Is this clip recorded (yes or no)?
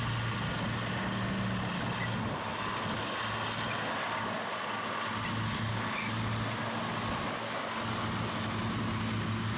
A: yes